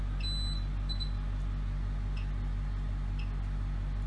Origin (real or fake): real